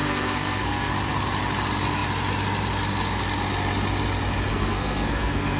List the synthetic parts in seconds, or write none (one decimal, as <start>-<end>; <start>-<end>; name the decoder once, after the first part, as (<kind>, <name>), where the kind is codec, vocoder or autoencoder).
0.0-0.9 (codec, SNAC); 4.5-5.6